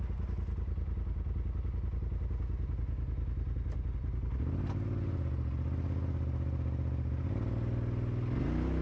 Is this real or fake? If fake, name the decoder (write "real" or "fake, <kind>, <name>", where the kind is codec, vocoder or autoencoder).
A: real